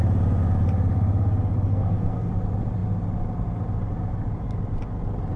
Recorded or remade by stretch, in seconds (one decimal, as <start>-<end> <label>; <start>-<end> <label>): 0.0-1.7 recorded; 1.7-2.3 remade; 2.3-5.4 recorded